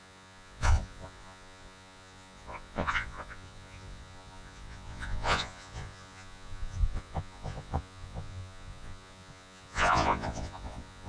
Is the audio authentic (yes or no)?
no